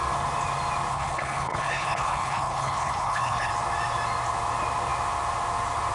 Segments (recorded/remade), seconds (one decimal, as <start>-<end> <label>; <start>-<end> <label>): 0.0-0.9 recorded; 0.9-3.5 remade; 3.5-5.9 recorded